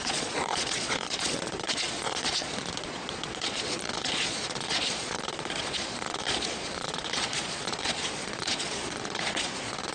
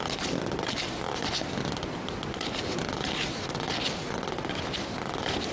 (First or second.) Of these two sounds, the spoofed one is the first